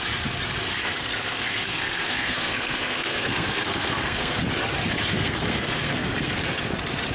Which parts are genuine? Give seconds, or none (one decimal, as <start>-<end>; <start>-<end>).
0.0-0.8; 4.4-5.1; 6.4-7.1